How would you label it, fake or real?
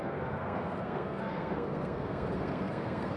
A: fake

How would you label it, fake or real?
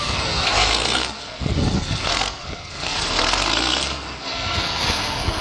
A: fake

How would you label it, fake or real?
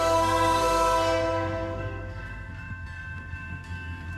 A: fake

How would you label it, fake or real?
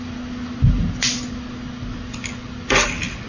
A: real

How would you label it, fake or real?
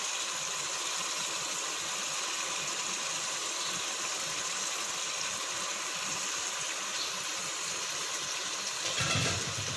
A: real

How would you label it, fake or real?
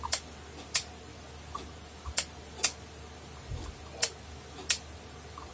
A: real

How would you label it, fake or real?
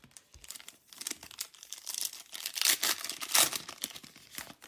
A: real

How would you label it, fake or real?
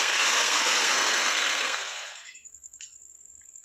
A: fake